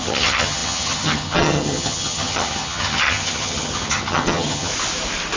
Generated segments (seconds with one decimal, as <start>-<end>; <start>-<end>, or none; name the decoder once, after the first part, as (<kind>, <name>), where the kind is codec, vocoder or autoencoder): 0.0-4.7 (vocoder, HiFi-GAN)

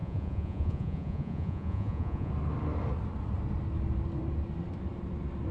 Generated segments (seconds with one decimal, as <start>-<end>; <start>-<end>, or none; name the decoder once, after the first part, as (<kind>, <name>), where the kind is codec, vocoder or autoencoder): 0.0-2.3 (vocoder, Vocos)

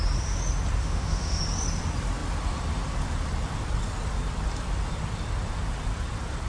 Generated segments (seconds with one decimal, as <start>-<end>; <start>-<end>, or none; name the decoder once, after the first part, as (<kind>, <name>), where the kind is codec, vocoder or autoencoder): 0.8-1.4 (autoencoder, DAC-VAE)

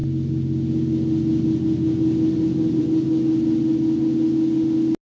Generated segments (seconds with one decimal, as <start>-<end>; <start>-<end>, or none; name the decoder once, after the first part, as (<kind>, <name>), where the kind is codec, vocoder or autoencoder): none

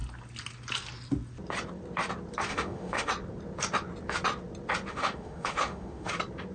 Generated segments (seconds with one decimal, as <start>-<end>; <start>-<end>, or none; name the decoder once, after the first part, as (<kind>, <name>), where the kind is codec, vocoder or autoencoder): 2.5-3.1 (autoencoder, DAC-VAE); 4.9-6.1

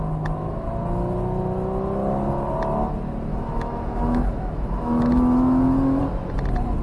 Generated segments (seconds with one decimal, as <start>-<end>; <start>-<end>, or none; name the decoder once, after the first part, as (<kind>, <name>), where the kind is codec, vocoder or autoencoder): 3.3-6.0 (autoencoder, DAC-VAE)

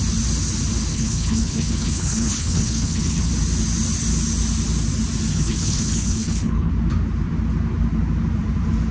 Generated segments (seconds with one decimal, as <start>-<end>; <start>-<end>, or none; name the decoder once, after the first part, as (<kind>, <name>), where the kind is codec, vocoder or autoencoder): 0.9-3.3 (codec, HILCodec); 5.3-6.7